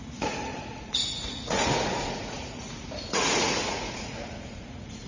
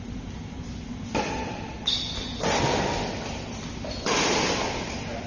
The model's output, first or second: first